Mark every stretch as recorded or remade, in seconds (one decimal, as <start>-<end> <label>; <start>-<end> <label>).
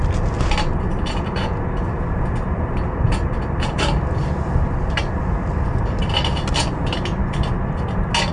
0.0-6.2 remade; 6.2-8.3 recorded